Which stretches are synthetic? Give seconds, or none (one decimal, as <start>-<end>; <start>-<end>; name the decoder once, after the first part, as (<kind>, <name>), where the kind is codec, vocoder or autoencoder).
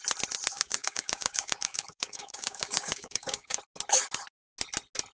0.5-3.6 (codec, DAC)